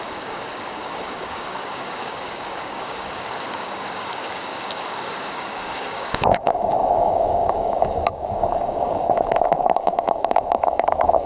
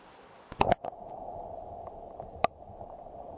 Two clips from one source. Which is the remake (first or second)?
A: first